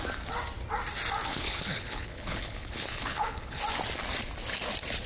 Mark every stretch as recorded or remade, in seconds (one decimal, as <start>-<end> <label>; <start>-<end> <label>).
0.0-1.3 recorded; 1.3-3.6 remade; 3.6-5.1 recorded